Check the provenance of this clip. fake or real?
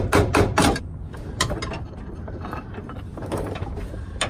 fake